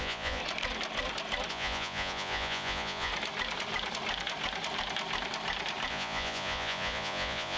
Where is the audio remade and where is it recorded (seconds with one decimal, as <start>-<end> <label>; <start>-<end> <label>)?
0.0-0.4 remade; 0.4-1.5 recorded; 1.5-3.1 remade; 3.1-5.9 recorded; 5.9-7.6 remade